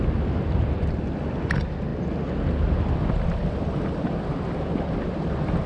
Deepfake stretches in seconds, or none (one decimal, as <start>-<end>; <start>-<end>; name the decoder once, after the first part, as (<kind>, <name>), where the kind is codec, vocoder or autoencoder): none